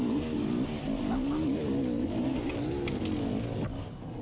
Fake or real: real